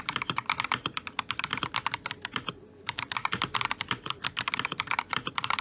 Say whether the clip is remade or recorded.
recorded